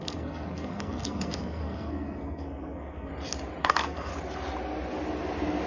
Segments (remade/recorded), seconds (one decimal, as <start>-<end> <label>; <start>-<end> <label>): 0.0-3.1 remade; 3.1-3.6 recorded; 3.6-4.1 remade; 4.1-5.7 recorded